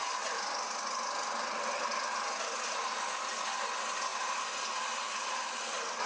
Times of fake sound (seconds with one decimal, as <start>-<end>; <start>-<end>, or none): none